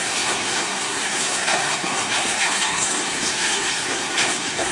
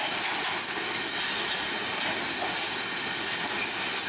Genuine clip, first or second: second